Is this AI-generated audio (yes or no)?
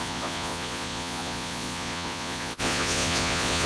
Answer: yes